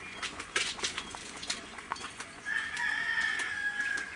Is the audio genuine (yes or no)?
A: no